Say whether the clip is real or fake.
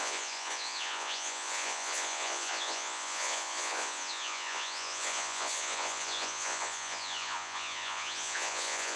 fake